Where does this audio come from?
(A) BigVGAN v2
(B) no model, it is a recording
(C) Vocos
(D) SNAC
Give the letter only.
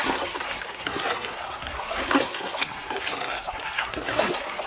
D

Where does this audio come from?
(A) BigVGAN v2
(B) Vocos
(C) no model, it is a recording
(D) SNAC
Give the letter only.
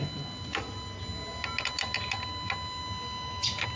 C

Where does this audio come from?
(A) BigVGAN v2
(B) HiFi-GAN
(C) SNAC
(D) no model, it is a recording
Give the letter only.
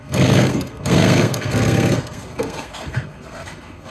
C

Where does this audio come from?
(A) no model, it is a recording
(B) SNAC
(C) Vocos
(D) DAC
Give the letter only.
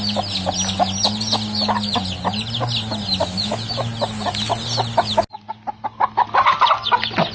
A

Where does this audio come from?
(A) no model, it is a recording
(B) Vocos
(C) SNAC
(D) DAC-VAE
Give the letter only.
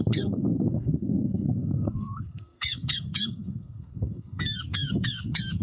C